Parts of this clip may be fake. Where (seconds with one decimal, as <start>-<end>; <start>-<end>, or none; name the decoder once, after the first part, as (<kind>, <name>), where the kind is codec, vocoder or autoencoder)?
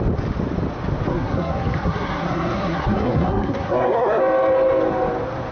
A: 1.1-4.2 (codec, SNAC)